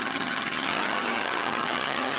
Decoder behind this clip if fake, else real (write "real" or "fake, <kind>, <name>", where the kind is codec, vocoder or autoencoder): fake, vocoder, HiFi-GAN